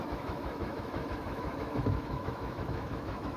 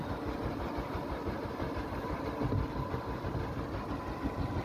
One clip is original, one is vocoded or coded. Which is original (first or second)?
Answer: second